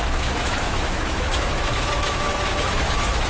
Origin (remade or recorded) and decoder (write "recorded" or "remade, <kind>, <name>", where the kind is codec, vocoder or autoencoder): remade, autoencoder, DAC-VAE